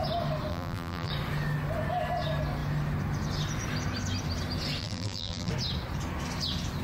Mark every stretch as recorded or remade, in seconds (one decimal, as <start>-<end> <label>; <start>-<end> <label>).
0.0-0.5 recorded; 0.5-1.1 remade; 1.1-4.8 recorded; 4.8-5.5 remade; 5.5-6.8 recorded